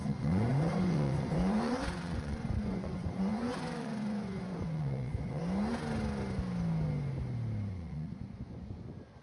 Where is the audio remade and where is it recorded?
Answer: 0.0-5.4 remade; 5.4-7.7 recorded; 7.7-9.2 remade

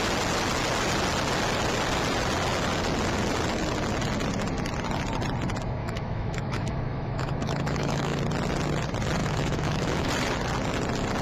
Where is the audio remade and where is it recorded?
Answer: 0.0-5.8 recorded; 5.8-8.2 remade; 8.2-9.2 recorded; 9.2-10.1 remade; 10.1-11.2 recorded

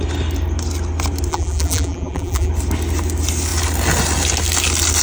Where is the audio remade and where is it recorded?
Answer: 0.0-1.3 recorded; 1.3-2.5 remade; 2.5-5.0 recorded

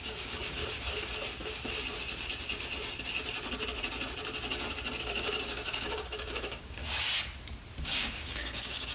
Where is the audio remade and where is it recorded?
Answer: 0.0-0.6 remade; 0.6-5.0 recorded; 5.0-6.8 remade; 6.8-7.8 recorded; 7.8-8.9 remade

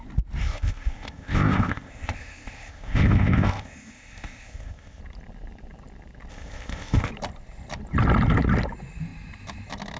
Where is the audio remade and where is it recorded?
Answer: 0.0-0.4 recorded; 0.4-5.0 remade; 5.0-6.3 recorded; 6.3-7.1 remade; 7.1-10.0 recorded

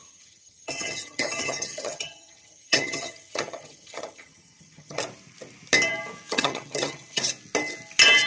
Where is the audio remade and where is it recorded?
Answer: 0.0-5.0 remade; 5.0-6.3 recorded; 6.3-7.2 remade; 7.2-8.3 recorded